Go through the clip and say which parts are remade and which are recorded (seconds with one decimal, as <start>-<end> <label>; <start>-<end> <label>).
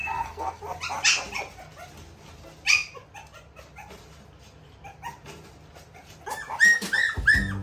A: 0.0-0.6 remade; 0.6-7.6 recorded